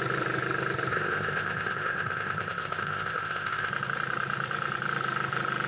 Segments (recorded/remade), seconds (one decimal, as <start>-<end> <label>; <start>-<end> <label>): 0.0-0.9 recorded; 0.9-3.7 remade; 3.7-5.7 recorded